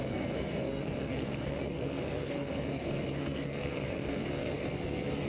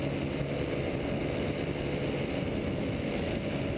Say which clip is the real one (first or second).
second